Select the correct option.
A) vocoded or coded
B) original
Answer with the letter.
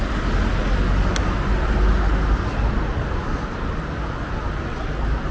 B